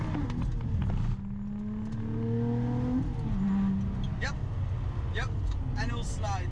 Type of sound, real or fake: real